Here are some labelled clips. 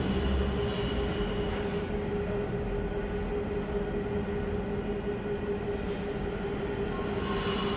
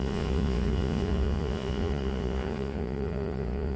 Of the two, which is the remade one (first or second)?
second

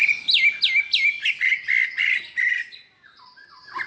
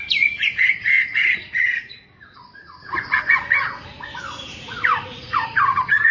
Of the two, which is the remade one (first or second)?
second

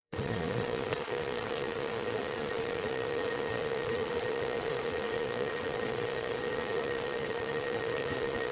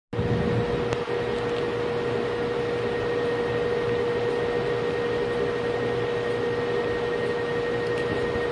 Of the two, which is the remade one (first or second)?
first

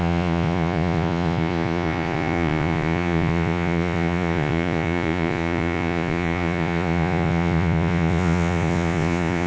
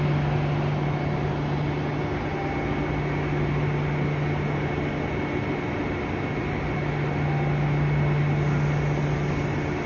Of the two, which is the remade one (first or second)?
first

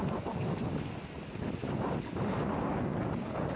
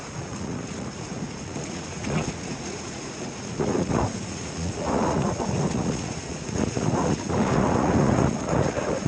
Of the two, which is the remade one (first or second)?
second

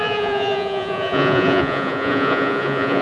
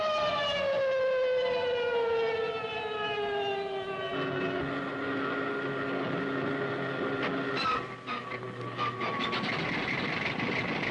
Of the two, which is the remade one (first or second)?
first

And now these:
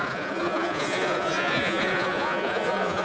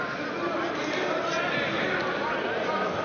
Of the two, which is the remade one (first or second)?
first